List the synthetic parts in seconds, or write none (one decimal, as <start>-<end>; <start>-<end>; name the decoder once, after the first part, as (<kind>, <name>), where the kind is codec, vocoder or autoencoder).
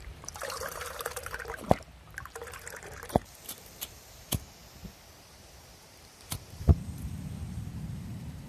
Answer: 0.0-4.6 (vocoder, BigVGAN v2); 5.3-8.5